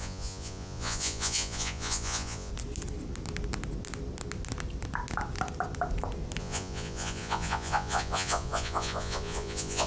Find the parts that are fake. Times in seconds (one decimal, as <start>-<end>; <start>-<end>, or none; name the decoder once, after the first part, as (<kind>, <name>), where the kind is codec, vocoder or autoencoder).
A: 0.0-2.5 (vocoder, Vocos); 6.4-9.9